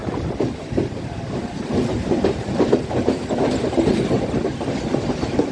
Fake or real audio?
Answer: fake